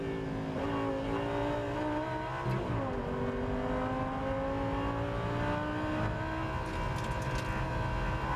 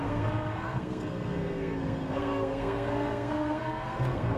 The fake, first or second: second